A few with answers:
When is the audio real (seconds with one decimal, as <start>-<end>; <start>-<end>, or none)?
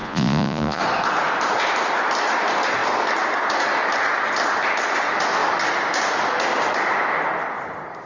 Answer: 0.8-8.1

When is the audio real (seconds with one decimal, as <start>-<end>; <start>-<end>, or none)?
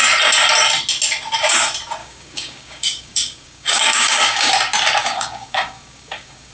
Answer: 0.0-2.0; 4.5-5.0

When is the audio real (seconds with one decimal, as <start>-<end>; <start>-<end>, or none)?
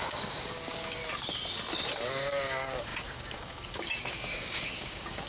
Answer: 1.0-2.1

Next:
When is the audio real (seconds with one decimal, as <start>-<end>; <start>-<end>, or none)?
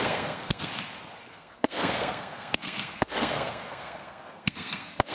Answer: 0.7-1.3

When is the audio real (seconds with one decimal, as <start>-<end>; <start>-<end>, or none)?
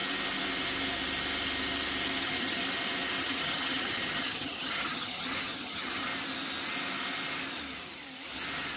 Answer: 0.0-2.2; 2.6-3.2; 6.1-8.8